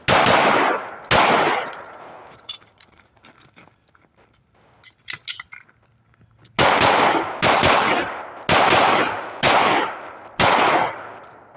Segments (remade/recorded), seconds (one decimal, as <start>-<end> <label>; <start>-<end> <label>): 0.0-1.3 recorded; 1.3-3.1 remade; 3.1-11.6 recorded